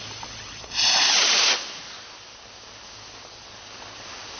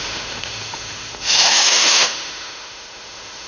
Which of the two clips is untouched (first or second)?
first